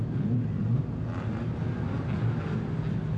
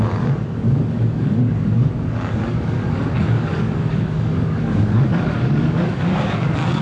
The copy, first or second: second